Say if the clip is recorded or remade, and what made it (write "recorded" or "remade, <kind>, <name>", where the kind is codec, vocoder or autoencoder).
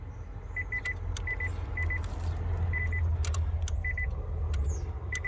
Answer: recorded